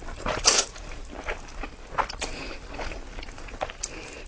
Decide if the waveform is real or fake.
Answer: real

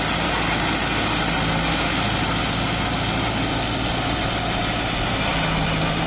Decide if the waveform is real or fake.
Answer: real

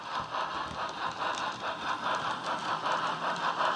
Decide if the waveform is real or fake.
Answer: real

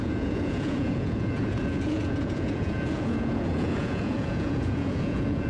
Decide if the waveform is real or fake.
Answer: fake